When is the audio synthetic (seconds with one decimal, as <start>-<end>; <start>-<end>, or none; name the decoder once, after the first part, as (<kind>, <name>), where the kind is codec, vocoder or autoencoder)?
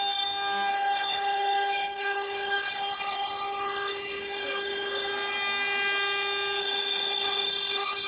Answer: 0.7-5.1 (codec, HILCodec); 6.6-8.1